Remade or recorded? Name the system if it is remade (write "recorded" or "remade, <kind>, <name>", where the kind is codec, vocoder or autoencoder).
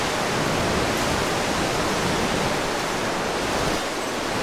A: recorded